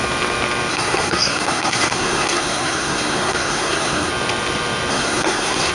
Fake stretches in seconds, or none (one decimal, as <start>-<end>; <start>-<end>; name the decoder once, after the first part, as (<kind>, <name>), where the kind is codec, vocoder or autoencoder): 0.7-4.1 (codec, SNAC); 4.9-5.7